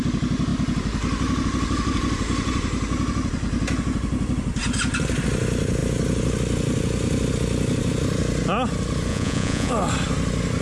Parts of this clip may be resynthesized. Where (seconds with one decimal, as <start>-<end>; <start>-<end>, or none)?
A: 9.1-9.7